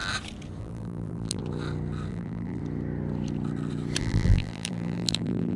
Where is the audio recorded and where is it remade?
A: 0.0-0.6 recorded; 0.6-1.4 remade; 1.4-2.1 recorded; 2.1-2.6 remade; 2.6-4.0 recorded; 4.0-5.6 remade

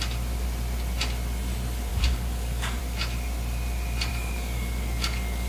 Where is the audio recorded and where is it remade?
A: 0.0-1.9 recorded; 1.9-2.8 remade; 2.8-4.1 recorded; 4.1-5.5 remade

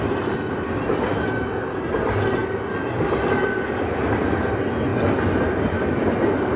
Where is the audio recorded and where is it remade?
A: 0.0-6.6 recorded

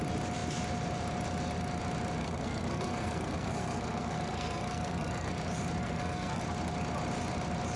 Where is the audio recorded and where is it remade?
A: 0.0-2.2 recorded; 2.2-5.3 remade; 5.3-5.8 recorded; 5.8-6.4 remade; 6.4-7.8 recorded

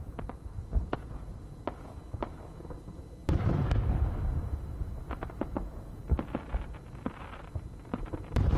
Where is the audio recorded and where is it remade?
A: 0.0-0.5 recorded; 0.5-1.4 remade; 1.4-8.6 recorded

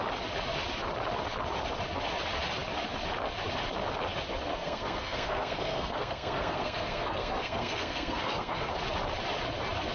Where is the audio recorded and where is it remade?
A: 0.0-4.5 recorded; 4.5-8.7 remade; 8.7-9.9 recorded